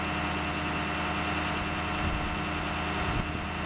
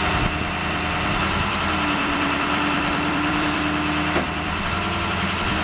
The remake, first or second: second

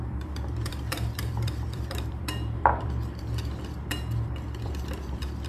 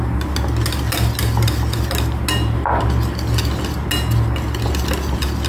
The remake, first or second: first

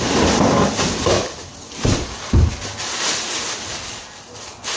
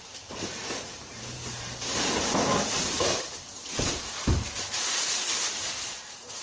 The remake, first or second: second